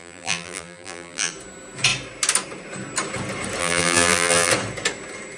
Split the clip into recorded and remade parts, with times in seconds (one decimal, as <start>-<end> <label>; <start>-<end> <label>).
0.0-1.3 remade; 1.3-3.6 recorded; 3.6-4.5 remade; 4.5-5.4 recorded